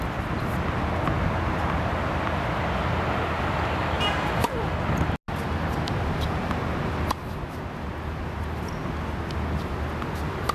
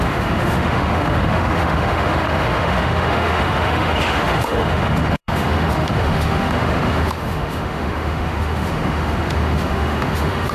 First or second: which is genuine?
first